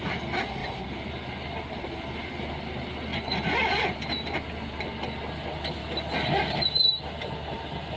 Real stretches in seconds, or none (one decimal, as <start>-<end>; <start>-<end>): 0.0-0.6; 1.9-8.0